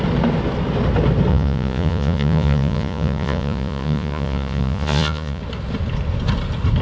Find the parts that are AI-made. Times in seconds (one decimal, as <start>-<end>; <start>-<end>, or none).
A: 1.3-5.4